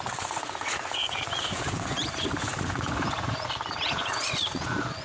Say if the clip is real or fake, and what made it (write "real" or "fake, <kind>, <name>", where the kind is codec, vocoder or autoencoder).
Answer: fake, vocoder, Vocos